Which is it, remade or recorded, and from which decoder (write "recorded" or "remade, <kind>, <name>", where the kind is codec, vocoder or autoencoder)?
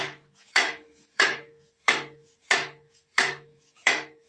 remade, autoencoder, DAC-VAE